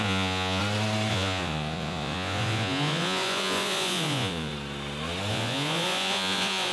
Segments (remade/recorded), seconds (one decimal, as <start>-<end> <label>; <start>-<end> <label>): 0.0-0.6 remade; 0.6-1.1 recorded; 1.1-4.5 remade; 4.5-5.3 recorded; 5.3-6.7 remade